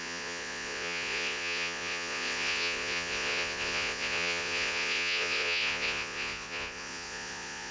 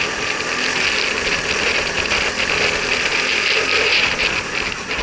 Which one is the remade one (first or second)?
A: first